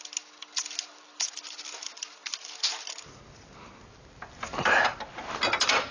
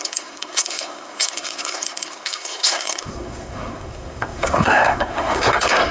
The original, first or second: first